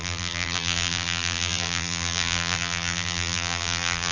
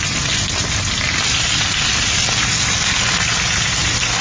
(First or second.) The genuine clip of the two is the second